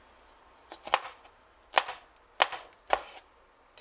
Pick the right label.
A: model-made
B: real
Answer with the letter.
B